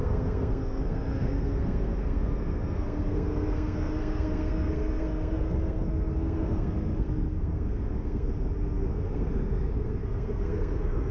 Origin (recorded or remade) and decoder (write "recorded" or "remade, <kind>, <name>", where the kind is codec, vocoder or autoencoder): remade, codec, SNAC